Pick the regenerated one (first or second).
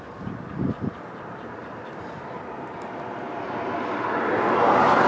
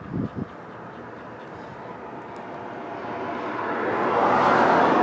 first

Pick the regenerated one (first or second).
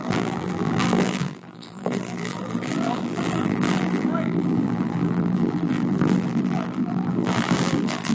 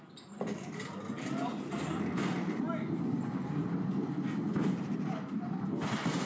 first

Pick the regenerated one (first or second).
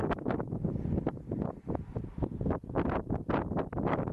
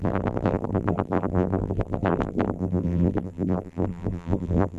second